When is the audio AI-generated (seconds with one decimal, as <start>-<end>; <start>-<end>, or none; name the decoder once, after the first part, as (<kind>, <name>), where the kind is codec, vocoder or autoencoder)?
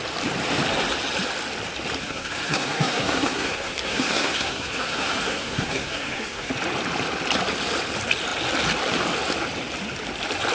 2.0-6.5 (codec, SNAC)